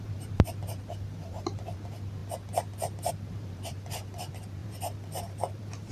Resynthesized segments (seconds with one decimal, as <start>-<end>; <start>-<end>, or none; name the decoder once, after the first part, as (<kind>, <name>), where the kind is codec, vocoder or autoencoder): 0.0-2.2 (vocoder, BigVGAN v2); 3.1-5.9